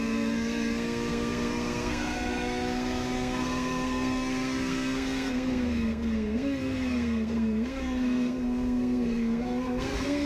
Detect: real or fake fake